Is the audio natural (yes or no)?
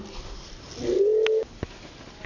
yes